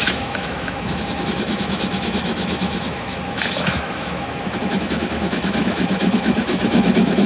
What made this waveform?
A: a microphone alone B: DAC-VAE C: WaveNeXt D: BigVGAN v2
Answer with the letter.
B